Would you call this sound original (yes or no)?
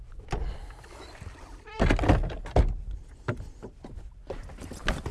yes